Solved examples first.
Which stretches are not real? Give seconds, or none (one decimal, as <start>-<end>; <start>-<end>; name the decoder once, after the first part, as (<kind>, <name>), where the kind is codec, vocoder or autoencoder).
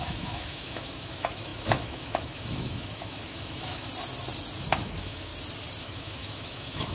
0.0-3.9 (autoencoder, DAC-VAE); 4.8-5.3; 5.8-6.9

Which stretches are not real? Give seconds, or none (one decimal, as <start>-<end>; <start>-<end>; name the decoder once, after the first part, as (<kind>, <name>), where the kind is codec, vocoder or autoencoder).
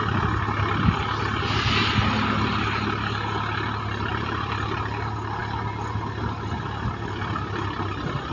4.1-4.6 (vocoder, BigVGAN v2)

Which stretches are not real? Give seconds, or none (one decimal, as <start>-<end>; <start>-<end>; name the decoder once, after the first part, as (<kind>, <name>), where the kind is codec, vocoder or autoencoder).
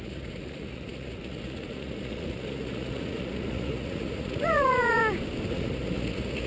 0.0-5.0 (vocoder, Vocos); 5.5-6.5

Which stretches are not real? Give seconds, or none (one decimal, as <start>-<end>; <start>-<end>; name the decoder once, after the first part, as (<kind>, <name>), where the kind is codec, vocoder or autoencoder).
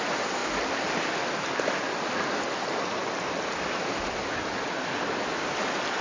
none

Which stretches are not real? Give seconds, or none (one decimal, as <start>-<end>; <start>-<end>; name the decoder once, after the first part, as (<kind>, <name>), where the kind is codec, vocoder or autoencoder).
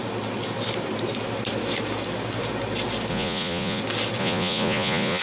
3.1-3.8 (vocoder, Vocos); 4.2-5.2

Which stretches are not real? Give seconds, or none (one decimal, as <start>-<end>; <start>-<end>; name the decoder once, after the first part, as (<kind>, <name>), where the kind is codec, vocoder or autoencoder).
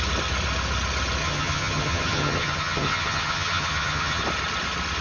1.2-4.2 (vocoder, HiFi-GAN)